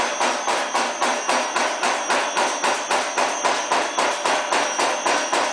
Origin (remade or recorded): recorded